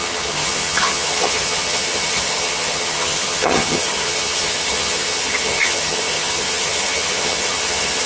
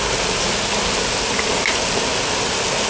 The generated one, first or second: first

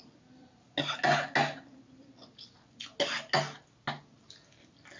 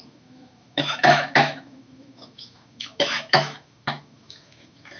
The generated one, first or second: second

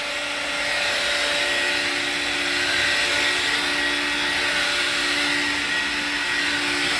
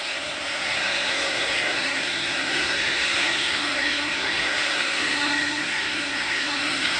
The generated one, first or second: second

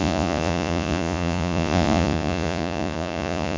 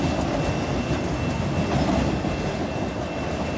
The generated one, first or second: first